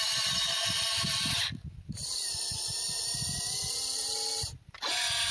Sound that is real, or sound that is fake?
fake